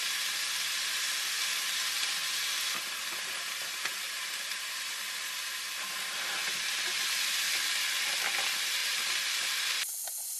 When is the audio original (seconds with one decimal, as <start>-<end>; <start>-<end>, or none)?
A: 0.0-8.8; 9.8-10.4

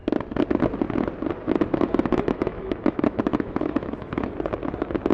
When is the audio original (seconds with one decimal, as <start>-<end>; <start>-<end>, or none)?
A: 0.0-1.7; 4.3-5.1